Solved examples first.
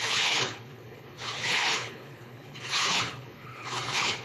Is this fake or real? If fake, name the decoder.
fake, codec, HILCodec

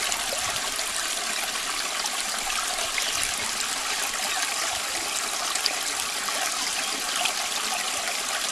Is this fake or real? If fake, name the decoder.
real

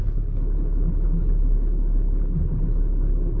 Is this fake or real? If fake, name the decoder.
fake, codec, HILCodec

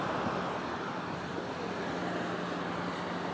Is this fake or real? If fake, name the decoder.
real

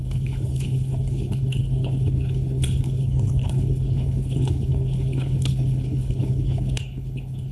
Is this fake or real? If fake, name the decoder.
fake, codec, HILCodec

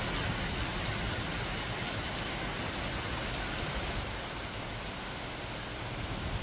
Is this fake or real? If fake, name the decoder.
real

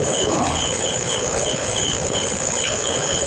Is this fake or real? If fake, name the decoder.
fake, codec, HILCodec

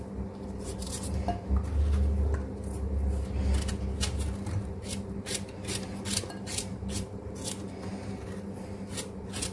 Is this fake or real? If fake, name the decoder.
real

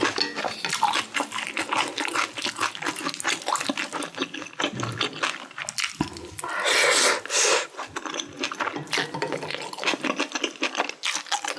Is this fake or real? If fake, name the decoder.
real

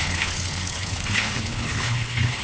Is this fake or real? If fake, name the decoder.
fake, codec, HILCodec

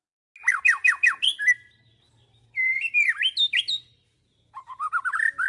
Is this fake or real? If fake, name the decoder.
real